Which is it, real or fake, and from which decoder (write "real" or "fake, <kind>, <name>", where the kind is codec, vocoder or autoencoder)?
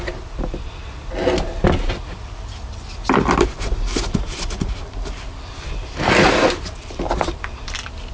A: real